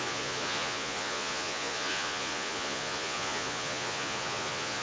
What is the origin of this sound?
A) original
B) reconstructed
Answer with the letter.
B